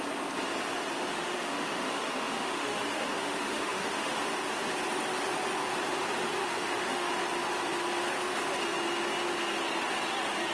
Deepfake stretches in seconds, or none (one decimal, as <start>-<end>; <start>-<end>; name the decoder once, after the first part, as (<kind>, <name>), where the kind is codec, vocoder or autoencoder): 1.1-4.1 (autoencoder, DAC-VAE); 6.4-7.1